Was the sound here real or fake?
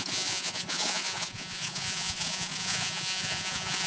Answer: fake